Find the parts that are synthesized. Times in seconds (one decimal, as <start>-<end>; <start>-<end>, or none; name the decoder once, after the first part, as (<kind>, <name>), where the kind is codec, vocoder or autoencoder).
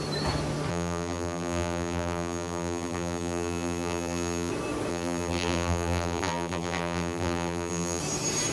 0.7-4.5 (vocoder, BigVGAN v2); 4.9-8.0